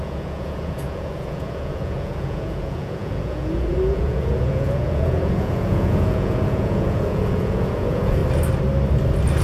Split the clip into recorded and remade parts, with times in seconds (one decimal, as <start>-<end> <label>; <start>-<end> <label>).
0.0-8.2 remade; 8.2-9.4 recorded